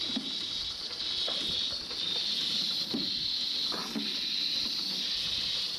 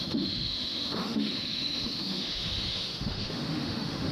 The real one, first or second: first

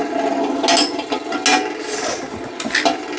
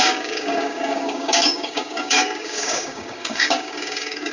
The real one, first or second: first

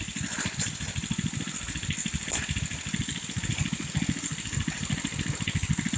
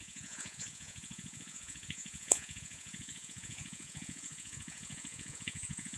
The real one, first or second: first